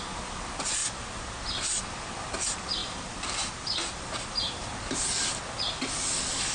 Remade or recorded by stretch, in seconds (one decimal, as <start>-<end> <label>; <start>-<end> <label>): 0.0-6.5 recorded